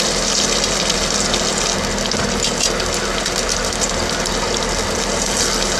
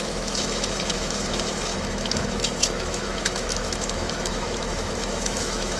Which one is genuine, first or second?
first